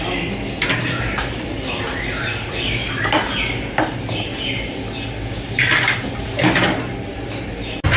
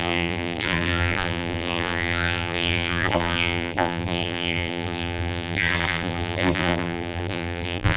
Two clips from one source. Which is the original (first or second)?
first